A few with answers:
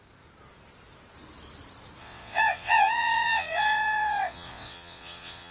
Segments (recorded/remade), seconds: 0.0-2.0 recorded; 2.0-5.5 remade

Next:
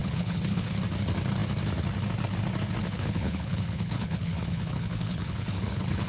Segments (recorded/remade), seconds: 0.0-0.8 remade; 0.8-2.8 recorded; 2.8-6.1 remade

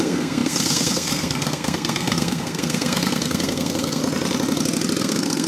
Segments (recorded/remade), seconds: 0.0-4.0 remade; 4.0-5.0 recorded; 5.0-5.5 remade